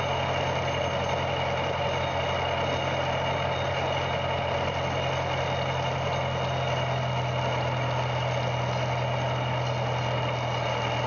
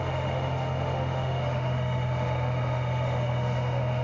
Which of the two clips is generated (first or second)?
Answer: second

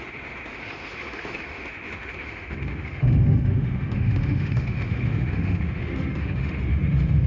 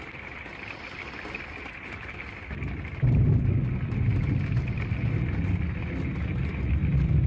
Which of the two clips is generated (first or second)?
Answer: first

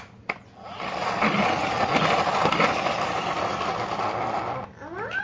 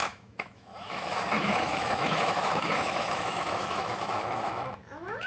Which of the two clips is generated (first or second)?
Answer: second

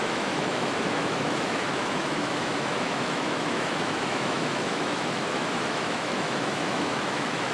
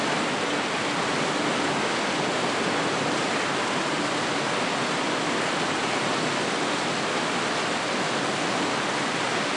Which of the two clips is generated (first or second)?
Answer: first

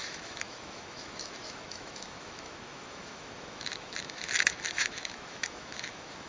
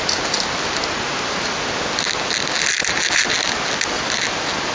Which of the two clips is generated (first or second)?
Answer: first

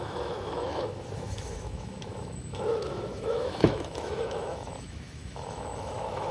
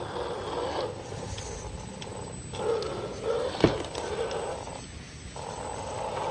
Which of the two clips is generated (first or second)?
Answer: first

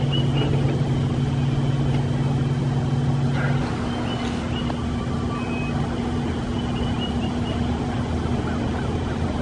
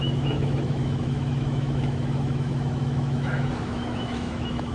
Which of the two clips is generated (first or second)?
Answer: second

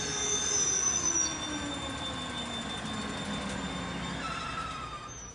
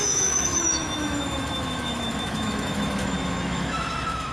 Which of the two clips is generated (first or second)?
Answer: second